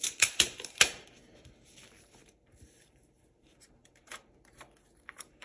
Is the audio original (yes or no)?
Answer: no